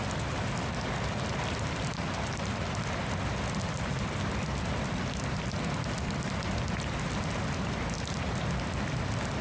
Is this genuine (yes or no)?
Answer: yes